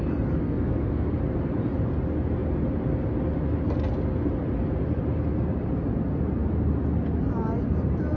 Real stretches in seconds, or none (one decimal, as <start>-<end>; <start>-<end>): 0.0-0.4; 1.1-8.2